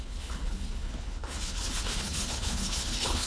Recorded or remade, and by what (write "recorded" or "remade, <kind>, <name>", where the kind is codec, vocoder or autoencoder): remade, codec, HILCodec